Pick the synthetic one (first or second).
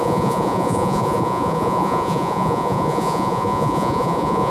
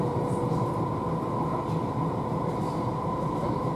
first